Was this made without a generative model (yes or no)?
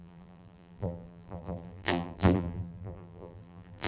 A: no